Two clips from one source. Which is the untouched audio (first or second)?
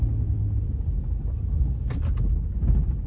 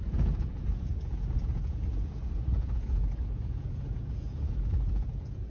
first